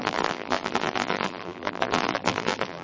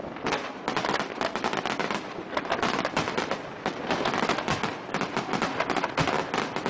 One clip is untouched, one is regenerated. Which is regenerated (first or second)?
first